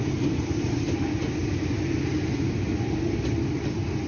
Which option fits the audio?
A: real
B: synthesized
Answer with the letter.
A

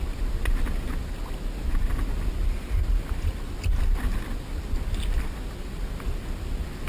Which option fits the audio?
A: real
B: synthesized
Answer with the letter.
A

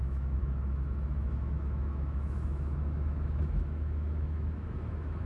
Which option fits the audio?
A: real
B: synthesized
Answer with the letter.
B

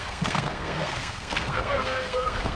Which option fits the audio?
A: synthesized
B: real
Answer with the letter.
A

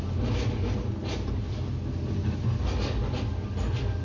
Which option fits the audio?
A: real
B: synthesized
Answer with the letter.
A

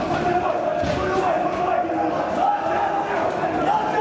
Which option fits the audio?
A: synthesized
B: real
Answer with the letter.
B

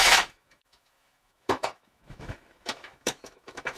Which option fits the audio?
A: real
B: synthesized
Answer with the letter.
B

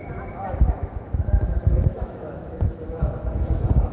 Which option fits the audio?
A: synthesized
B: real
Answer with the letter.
A